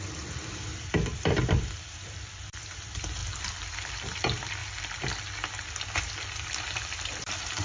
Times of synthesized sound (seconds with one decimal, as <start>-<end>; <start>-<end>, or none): 0.0-4.6; 6.6-7.6